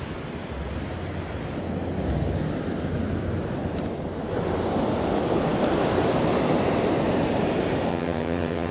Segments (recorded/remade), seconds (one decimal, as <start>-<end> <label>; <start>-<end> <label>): 0.0-7.9 recorded; 7.9-8.7 remade